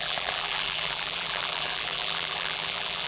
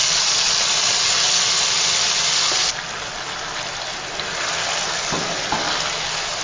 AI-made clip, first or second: first